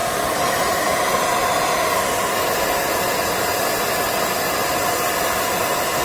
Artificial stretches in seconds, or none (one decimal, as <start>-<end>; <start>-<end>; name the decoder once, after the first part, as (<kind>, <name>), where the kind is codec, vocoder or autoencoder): none